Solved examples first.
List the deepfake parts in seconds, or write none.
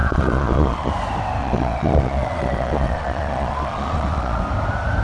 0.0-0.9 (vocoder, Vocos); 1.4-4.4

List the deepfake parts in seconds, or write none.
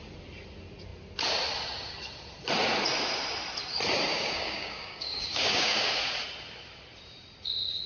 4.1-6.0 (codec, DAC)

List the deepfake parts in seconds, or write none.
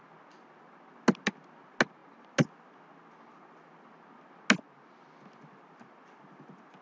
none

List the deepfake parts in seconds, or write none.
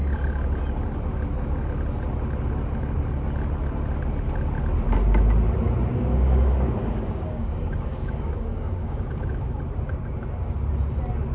5.9-9.6 (codec, DAC)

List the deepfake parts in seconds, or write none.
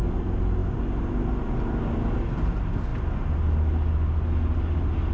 none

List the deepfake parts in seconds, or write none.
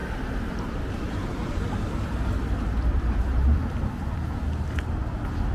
none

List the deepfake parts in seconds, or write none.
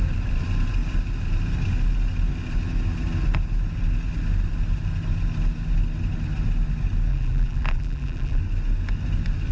7.1-8.4 (vocoder, BigVGAN v2)